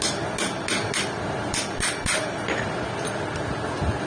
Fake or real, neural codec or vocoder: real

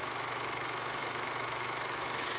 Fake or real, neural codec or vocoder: fake, autoencoder, DAC-VAE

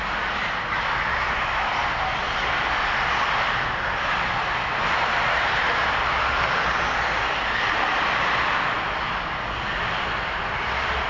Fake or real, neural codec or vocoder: real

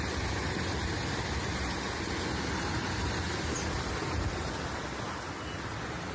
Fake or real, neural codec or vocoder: real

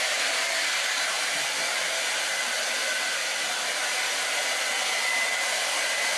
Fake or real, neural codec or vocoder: fake, vocoder, BigVGAN v2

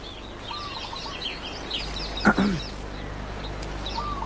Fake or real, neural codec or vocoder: real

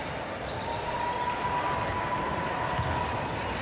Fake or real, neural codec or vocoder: real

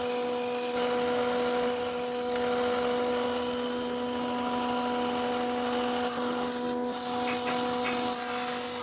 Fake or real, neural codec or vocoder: real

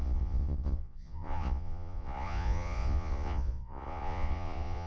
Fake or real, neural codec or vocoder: fake, vocoder, Vocos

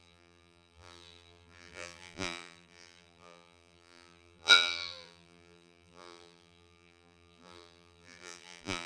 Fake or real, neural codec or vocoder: fake, vocoder, BigVGAN v2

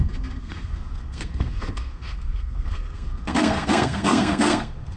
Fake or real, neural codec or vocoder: fake, codec, SNAC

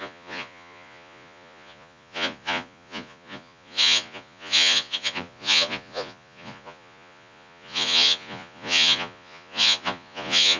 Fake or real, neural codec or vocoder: fake, vocoder, Vocos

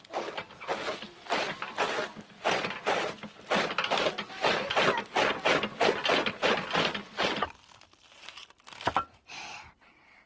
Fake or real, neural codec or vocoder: real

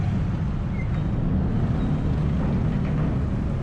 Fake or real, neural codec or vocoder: real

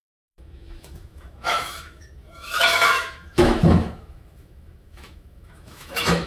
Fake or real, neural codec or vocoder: fake, autoencoder, DAC-VAE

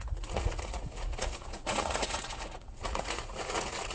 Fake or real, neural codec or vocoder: fake, vocoder, Vocos